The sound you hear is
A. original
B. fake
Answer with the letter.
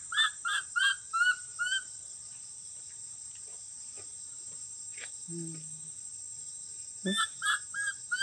A